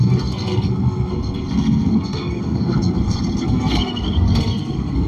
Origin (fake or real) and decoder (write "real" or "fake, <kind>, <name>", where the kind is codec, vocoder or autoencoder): fake, codec, SNAC